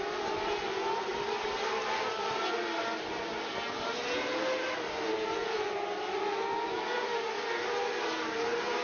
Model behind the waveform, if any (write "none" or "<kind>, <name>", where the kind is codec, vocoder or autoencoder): none